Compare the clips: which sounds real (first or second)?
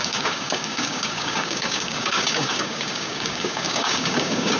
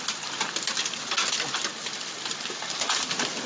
second